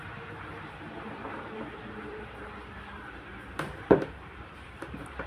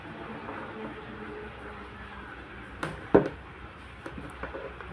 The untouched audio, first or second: second